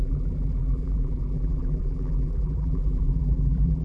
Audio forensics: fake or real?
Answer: fake